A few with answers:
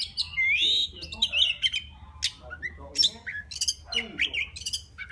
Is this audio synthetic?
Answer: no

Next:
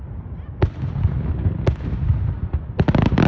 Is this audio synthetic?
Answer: no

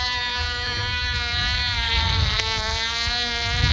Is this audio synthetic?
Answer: yes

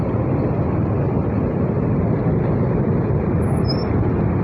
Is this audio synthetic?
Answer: no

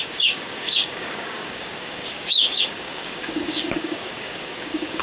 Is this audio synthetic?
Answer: yes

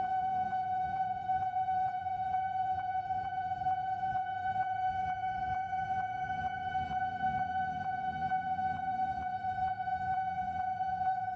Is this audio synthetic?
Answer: yes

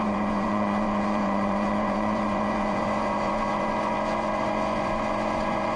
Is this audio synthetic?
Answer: yes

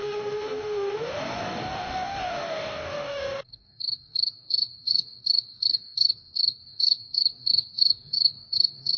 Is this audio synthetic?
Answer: yes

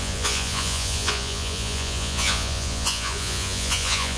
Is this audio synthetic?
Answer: yes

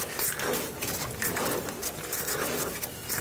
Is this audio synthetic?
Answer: no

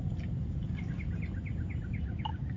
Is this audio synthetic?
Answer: no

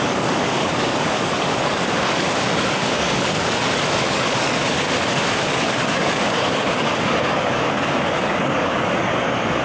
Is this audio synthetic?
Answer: yes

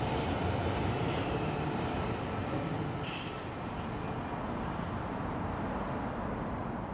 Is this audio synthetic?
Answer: no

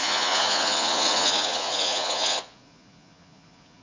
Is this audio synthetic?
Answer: yes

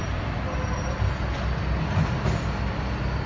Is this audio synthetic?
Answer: no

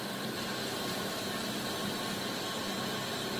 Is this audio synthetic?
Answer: no